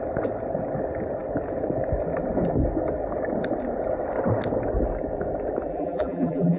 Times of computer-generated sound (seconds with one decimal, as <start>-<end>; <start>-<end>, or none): 5.7-6.6